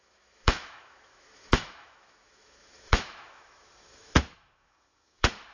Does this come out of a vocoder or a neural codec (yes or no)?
yes